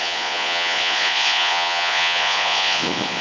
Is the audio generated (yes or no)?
yes